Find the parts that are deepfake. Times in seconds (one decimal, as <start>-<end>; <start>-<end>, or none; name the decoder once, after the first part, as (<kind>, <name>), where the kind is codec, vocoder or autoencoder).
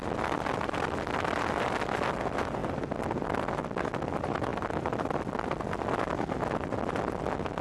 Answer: none